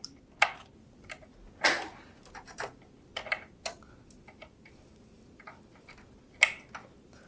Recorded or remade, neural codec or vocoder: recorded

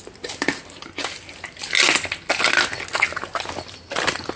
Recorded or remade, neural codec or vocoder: recorded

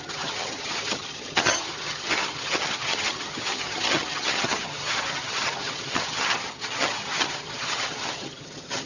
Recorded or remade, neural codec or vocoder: remade, vocoder, HiFi-GAN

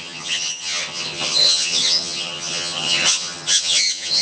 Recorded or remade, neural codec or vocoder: remade, vocoder, HiFi-GAN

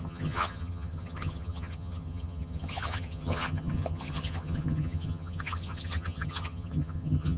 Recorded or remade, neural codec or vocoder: remade, vocoder, HiFi-GAN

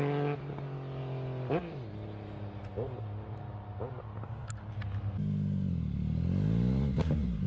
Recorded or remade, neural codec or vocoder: recorded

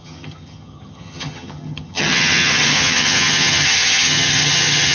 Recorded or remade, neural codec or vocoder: remade, vocoder, HiFi-GAN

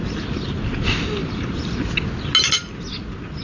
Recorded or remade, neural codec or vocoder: recorded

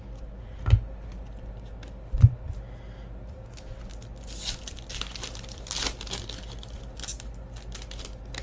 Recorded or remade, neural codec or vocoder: recorded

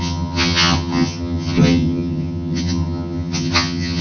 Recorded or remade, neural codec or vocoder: remade, vocoder, HiFi-GAN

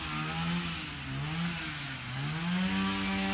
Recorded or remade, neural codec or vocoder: recorded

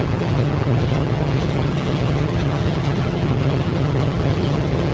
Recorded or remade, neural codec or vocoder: remade, vocoder, HiFi-GAN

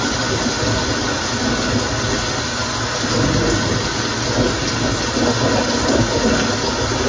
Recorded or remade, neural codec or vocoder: recorded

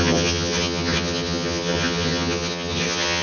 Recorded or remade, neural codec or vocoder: remade, vocoder, HiFi-GAN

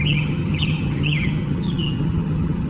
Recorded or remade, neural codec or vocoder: remade, vocoder, HiFi-GAN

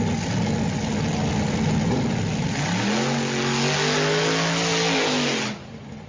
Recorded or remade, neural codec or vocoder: recorded